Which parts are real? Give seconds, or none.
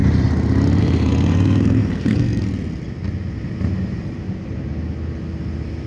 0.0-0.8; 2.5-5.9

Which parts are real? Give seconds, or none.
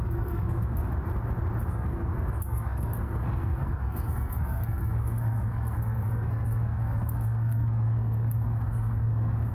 0.9-1.7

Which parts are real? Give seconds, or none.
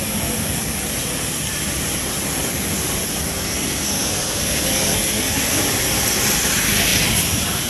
0.0-3.3; 5.6-7.7